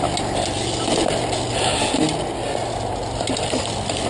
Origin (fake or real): real